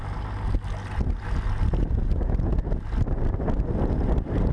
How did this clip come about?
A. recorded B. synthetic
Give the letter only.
A